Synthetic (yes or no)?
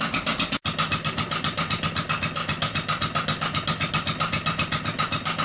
no